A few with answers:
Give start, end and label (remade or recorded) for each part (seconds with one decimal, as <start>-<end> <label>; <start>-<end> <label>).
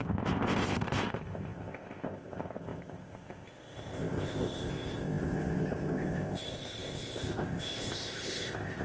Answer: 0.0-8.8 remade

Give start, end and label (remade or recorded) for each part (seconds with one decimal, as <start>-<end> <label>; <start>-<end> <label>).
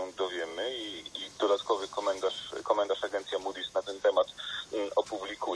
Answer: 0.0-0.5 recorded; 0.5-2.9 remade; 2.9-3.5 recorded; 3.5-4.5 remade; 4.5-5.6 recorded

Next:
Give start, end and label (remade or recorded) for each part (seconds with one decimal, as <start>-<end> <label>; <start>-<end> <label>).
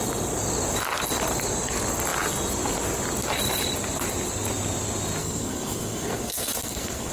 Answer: 0.0-5.2 recorded; 5.2-7.1 remade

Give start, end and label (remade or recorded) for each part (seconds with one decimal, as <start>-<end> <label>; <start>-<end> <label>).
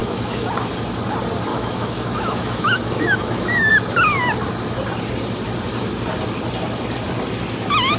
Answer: 0.0-0.5 remade; 0.5-1.5 recorded; 1.5-3.7 remade; 3.7-8.0 recorded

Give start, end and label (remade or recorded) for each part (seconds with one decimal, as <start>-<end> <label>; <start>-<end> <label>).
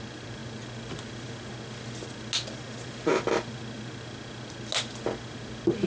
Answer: 0.0-5.9 recorded